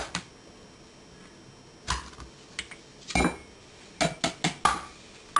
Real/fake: real